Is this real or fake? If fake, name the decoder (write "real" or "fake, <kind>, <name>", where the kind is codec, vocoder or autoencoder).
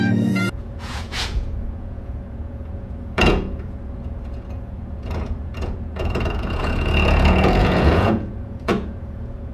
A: fake, vocoder, Vocos